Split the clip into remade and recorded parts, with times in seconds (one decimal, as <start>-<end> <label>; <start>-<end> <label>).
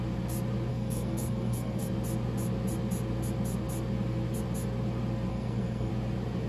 0.0-0.7 recorded; 0.7-1.9 remade; 1.9-5.3 recorded; 5.3-5.9 remade; 5.9-6.5 recorded